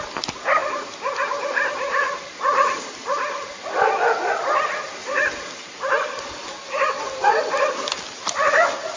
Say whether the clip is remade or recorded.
recorded